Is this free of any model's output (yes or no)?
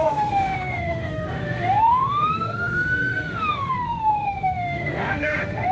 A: no